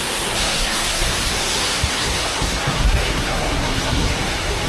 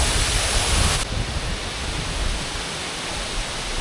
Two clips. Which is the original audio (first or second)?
second